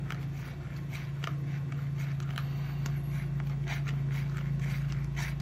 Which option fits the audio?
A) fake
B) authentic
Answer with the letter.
B